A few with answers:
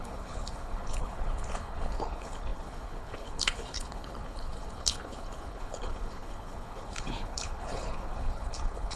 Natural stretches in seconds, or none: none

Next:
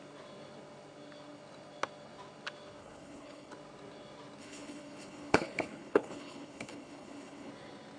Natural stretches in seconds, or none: 0.0-2.8; 3.5-4.4; 7.5-8.0

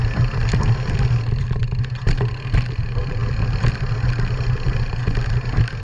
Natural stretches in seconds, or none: 0.0-5.8